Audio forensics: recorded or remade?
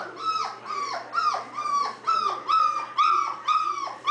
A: recorded